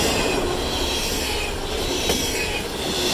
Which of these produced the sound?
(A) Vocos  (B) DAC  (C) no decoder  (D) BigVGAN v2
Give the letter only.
C